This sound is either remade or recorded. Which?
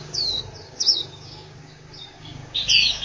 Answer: remade